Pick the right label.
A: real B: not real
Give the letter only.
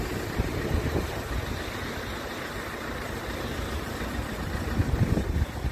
A